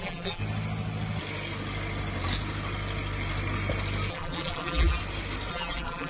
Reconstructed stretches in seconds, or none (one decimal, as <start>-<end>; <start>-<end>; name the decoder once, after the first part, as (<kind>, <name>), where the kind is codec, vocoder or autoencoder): 0.0-0.4 (vocoder, BigVGAN v2); 4.1-5.0; 5.5-6.1